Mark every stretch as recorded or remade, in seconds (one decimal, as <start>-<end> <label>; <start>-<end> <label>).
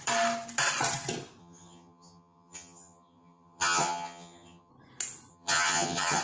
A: 0.0-1.4 recorded; 1.4-4.7 remade; 4.7-5.3 recorded; 5.3-6.2 remade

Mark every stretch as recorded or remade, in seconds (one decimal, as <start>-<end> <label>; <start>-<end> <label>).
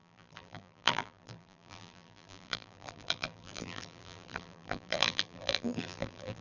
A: 0.0-6.4 remade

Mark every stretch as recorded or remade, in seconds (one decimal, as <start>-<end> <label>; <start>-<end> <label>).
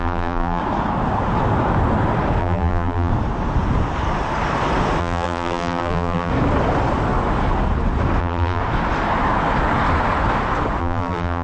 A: 0.0-0.6 remade; 0.6-2.4 recorded; 2.4-3.1 remade; 3.1-5.0 recorded; 5.0-6.3 remade; 6.3-8.2 recorded; 8.2-8.6 remade; 8.6-10.8 recorded; 10.8-11.4 remade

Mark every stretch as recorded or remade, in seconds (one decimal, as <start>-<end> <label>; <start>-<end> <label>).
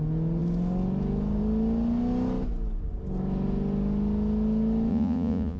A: 0.0-4.9 recorded; 4.9-5.6 remade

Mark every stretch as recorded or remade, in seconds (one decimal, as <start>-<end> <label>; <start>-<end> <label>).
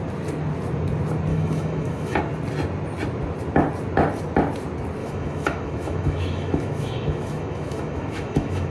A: 0.0-1.3 recorded; 1.3-2.2 remade; 2.2-5.0 recorded; 5.0-8.7 remade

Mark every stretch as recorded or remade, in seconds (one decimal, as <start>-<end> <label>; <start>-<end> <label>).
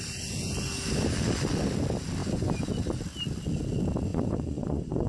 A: 0.0-2.2 recorded; 2.2-2.7 remade; 2.7-4.1 recorded; 4.1-5.1 remade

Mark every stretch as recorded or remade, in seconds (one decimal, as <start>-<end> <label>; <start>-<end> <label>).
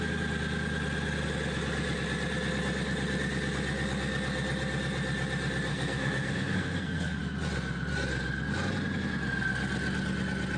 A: 0.0-5.7 recorded; 5.7-7.2 remade; 7.2-10.6 recorded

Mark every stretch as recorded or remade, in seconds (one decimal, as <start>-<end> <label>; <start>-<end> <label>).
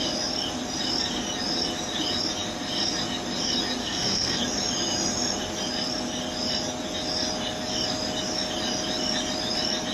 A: 0.0-3.8 recorded; 3.8-4.4 remade; 4.4-9.9 recorded